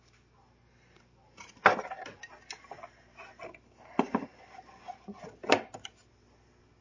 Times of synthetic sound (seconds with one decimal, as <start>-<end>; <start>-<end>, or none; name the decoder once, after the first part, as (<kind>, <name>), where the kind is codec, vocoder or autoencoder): none